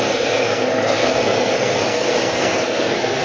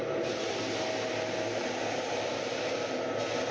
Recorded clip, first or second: second